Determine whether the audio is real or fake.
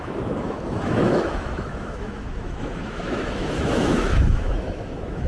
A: fake